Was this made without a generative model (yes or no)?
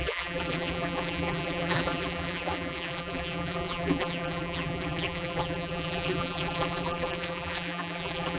no